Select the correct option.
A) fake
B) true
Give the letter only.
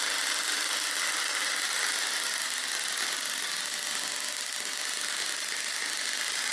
B